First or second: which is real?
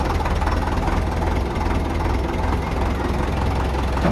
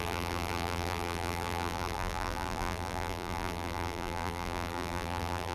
first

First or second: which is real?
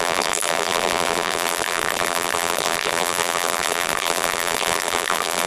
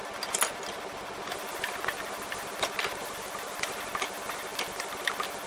second